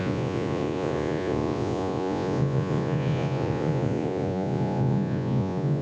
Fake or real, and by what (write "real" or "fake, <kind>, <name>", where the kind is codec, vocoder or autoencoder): fake, vocoder, Vocos